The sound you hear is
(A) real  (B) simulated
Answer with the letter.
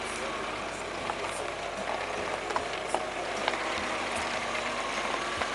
A